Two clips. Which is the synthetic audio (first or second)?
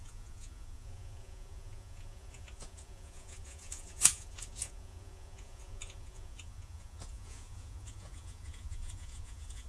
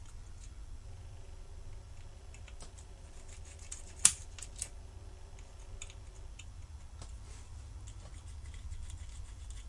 first